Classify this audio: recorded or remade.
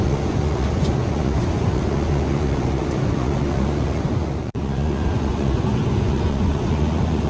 remade